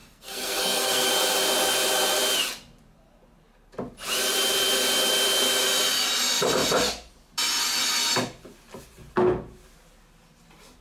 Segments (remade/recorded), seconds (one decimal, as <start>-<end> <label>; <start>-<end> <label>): 0.0-1.1 remade; 1.1-10.8 recorded